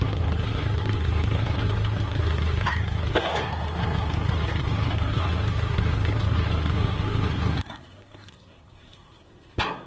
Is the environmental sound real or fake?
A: fake